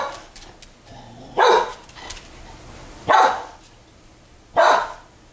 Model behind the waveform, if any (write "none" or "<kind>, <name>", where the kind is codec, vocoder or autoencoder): none